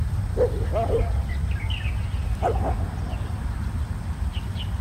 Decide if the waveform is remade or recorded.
recorded